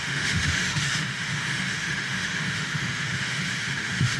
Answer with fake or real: fake